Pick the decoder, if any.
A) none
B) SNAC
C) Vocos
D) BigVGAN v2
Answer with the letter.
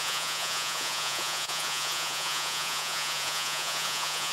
C